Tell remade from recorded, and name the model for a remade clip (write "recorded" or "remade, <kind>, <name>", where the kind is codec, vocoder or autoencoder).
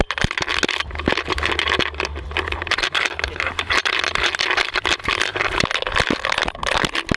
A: recorded